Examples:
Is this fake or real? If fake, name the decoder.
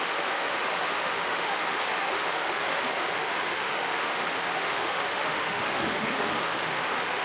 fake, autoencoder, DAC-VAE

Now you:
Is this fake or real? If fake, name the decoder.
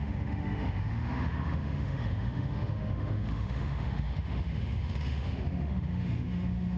fake, autoencoder, DAC-VAE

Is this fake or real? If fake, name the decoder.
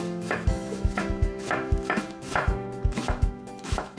fake, autoencoder, DAC-VAE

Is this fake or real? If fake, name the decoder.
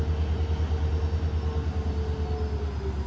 real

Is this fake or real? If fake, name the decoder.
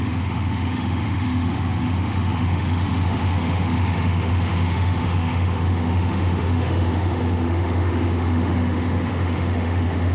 fake, autoencoder, DAC-VAE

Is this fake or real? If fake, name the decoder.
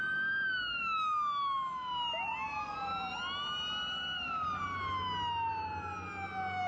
real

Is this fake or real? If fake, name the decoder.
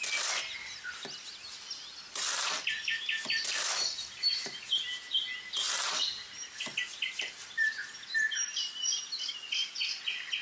real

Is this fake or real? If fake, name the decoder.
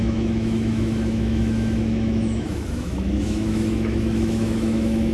fake, autoencoder, DAC-VAE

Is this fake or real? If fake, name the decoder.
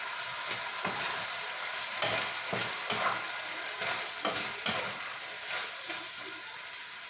real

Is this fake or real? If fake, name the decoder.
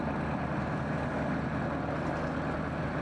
real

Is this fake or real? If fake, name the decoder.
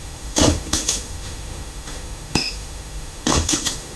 fake, autoencoder, DAC-VAE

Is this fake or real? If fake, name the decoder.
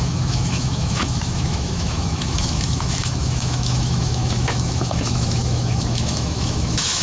fake, autoencoder, DAC-VAE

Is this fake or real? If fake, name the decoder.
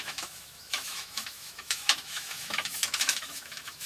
fake, autoencoder, DAC-VAE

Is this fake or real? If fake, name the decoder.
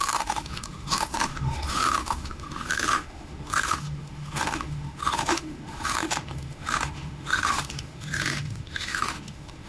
fake, autoencoder, DAC-VAE